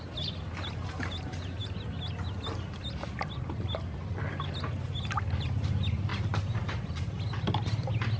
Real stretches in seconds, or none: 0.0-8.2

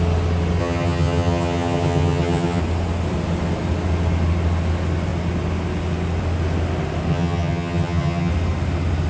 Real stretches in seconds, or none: 0.0-0.6; 2.6-7.1; 8.3-9.1

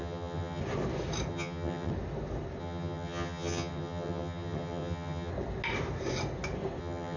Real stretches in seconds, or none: 0.6-1.3; 1.9-2.6; 5.3-6.8

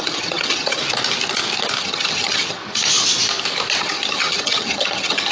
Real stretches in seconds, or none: 0.8-1.8; 2.6-3.8

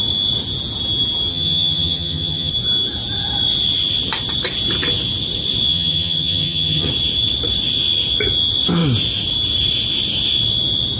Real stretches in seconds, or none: 0.0-1.3; 2.5-5.7; 6.9-11.0